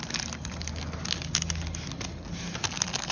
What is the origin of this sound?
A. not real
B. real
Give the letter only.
B